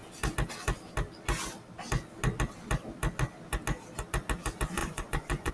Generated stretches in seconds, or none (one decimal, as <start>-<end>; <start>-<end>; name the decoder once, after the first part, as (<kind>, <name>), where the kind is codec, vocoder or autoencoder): 4.8-5.5 (vocoder, Vocos)